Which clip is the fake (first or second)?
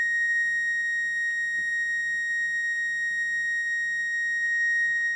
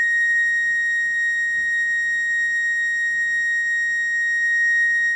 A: second